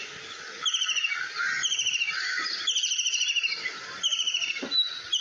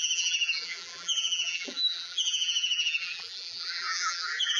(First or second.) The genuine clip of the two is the first